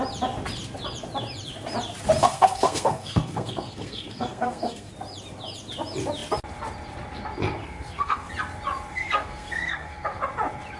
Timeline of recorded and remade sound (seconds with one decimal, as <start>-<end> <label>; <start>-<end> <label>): 0.0-2.2 recorded; 2.2-4.9 remade; 4.9-7.6 recorded; 7.6-8.3 remade; 8.3-8.9 recorded; 8.9-10.2 remade; 10.2-10.8 recorded